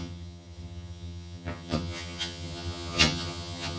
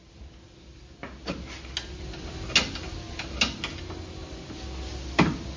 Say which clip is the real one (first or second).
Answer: second